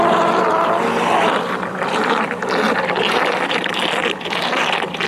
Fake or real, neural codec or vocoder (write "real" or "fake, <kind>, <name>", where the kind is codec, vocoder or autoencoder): fake, vocoder, BigVGAN v2